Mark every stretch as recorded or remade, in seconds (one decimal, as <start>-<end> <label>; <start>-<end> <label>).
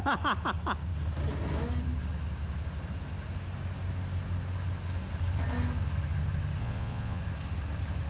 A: 0.0-6.6 recorded; 6.6-7.2 remade; 7.2-8.1 recorded